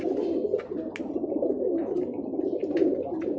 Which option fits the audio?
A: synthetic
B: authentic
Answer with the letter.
B